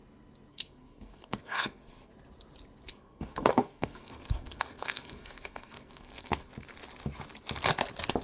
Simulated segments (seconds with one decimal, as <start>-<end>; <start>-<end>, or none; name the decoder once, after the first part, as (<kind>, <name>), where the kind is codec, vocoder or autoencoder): 0.5-2.1 (codec, SNAC); 2.9-6.5